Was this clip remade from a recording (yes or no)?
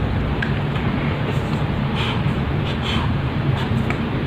yes